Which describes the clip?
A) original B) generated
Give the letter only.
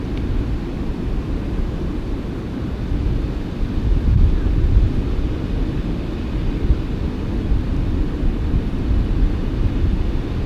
A